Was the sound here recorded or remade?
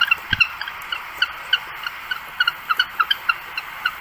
recorded